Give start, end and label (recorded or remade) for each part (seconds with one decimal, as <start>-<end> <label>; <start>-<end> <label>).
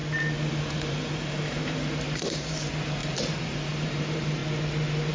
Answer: 0.0-0.5 recorded; 0.5-4.4 remade; 4.4-5.1 recorded